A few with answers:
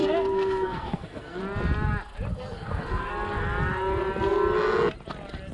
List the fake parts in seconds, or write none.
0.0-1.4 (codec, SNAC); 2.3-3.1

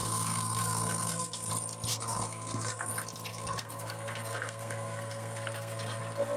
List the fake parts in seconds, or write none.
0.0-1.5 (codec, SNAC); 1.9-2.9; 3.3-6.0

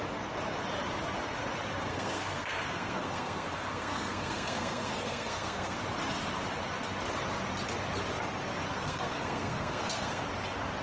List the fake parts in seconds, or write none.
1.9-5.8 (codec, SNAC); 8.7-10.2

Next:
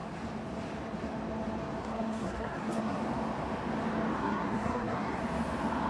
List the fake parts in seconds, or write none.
1.8-3.0 (codec, SNAC); 4.2-5.2

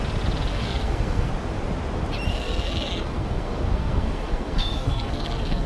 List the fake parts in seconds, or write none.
0.5-1.3 (codec, SNAC); 2.3-5.7

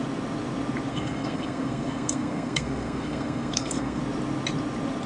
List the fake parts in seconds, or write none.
0.9-4.0 (codec, SNAC)